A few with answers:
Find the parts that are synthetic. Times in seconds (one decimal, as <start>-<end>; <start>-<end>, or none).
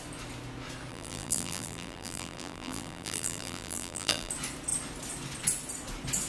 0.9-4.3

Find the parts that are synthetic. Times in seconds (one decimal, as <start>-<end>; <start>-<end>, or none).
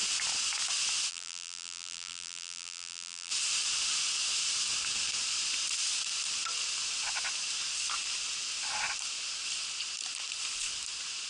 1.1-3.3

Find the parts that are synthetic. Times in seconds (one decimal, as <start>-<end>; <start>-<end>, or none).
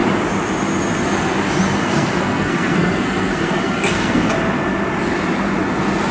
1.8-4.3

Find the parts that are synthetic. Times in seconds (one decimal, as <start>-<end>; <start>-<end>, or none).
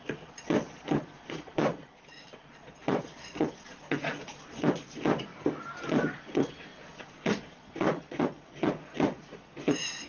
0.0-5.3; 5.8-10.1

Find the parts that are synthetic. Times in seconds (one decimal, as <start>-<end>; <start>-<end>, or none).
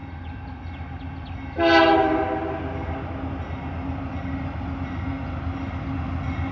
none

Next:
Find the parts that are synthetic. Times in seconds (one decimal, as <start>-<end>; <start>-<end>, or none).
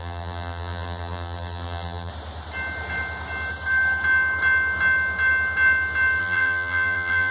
0.0-2.1; 6.2-7.3